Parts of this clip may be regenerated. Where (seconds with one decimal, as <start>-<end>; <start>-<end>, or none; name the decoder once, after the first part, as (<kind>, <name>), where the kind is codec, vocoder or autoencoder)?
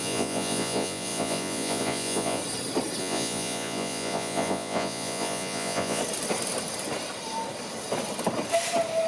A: 0.0-2.4 (vocoder, Vocos); 3.0-6.0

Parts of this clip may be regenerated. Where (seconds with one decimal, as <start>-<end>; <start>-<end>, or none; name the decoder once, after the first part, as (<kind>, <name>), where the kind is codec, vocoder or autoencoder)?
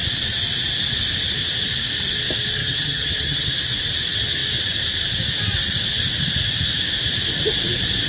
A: 2.6-3.5 (vocoder, HiFi-GAN)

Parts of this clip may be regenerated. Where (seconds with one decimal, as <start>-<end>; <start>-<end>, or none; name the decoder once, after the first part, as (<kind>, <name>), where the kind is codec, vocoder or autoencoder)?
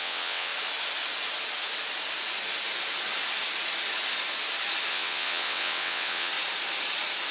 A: 0.0-0.5 (vocoder, WaveNeXt); 4.9-6.3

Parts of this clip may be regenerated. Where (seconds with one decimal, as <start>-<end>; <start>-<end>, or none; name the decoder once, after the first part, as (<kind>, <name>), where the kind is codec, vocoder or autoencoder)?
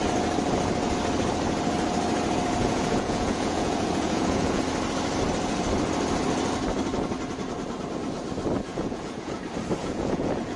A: 2.6-4.6 (vocoder, Vocos); 8.7-9.4; 9.8-10.6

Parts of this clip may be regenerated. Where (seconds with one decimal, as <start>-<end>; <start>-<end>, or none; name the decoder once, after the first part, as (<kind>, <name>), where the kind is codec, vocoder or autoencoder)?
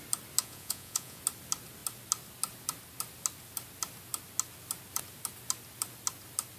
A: 0.4-1.2 (vocoder, Vocos)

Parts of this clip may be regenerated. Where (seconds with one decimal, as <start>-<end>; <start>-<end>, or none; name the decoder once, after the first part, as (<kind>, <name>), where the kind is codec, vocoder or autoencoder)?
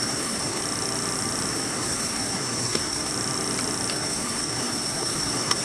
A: 0.0-0.6 (codec, SNAC); 1.5-3.1; 3.9-5.6